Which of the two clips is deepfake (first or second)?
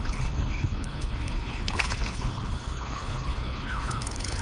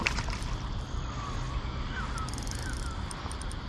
first